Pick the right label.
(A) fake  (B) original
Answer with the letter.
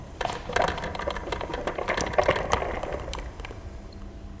B